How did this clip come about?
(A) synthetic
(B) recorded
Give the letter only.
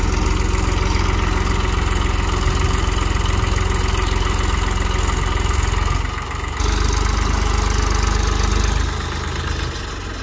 B